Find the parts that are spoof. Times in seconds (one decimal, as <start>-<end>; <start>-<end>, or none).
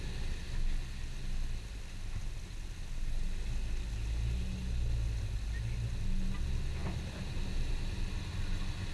none